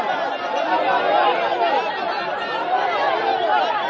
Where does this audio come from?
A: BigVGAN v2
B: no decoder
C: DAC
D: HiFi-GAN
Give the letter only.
B